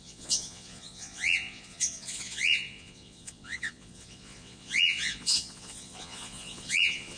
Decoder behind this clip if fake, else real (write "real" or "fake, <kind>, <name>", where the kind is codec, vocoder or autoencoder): fake, vocoder, Vocos